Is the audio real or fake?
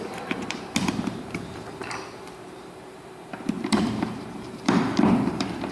fake